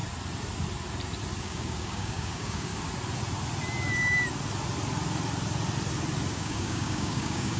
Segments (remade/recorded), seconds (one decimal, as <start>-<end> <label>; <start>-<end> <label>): 0.0-1.4 recorded; 1.4-2.7 remade; 2.7-6.3 recorded; 6.3-7.6 remade